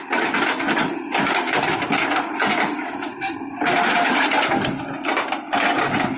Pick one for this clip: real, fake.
real